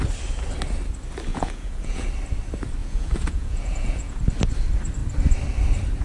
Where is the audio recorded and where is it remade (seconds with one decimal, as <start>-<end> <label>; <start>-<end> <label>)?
0.0-1.3 recorded; 1.3-2.1 remade; 2.1-2.8 recorded; 2.8-4.2 remade; 4.2-6.0 recorded